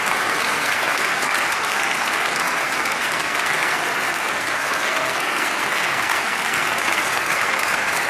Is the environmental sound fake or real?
fake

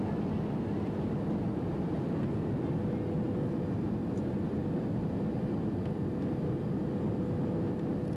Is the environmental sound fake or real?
real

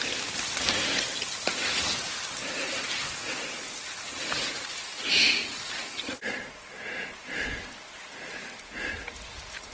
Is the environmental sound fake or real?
real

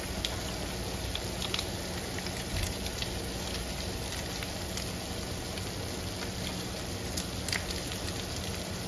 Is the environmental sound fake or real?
real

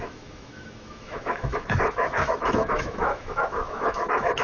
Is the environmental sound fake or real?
fake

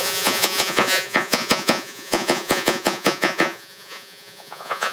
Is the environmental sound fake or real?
fake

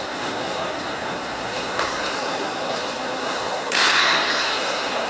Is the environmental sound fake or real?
fake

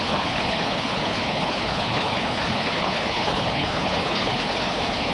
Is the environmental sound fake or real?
fake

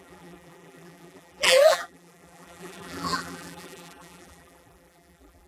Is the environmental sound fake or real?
fake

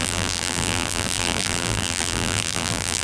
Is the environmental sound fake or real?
fake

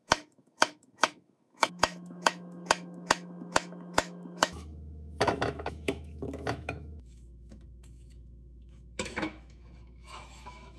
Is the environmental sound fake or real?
fake